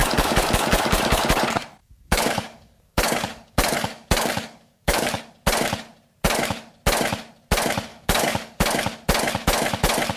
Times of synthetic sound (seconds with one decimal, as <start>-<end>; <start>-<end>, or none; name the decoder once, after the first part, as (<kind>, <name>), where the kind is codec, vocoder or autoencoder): 0.0-1.2 (codec, DAC); 1.8-5.2; 7.9-8.6